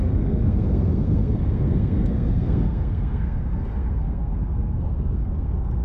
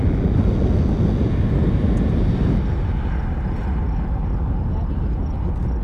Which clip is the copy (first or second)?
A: first